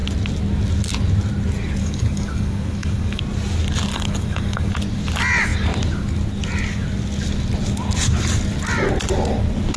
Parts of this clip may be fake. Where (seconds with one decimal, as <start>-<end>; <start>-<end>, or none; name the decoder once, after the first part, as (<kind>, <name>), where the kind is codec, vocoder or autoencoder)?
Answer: 1.8-3.2 (codec, DAC); 3.9-4.7